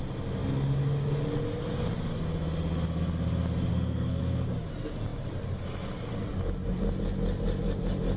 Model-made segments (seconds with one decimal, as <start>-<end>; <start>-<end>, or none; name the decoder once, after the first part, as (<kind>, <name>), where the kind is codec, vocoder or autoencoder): 3.7-4.2 (codec, SNAC)